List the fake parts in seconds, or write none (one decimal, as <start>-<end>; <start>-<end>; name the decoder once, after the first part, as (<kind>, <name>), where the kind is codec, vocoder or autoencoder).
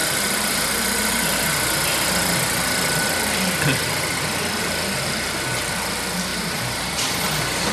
6.3-6.9 (vocoder, BigVGAN v2)